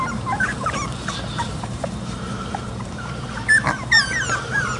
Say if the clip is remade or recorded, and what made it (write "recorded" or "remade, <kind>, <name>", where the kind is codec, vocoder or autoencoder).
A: remade, vocoder, BigVGAN v2